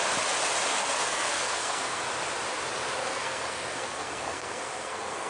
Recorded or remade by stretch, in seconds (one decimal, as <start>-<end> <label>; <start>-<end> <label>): 0.0-0.7 recorded; 0.7-2.1 remade; 2.1-3.0 recorded; 3.0-5.3 remade

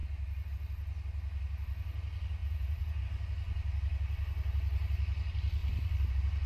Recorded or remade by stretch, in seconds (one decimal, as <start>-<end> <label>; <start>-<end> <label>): 0.0-2.4 recorded; 2.4-3.0 remade; 3.0-6.5 recorded

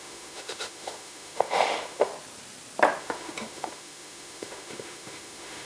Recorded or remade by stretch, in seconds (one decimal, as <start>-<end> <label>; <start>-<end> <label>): 0.0-2.1 remade; 2.1-3.0 recorded; 3.0-5.7 remade